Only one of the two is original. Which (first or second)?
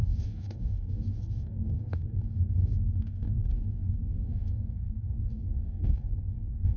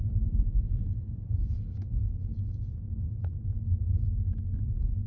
second